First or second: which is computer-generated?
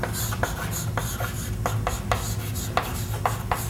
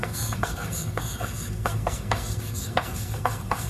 second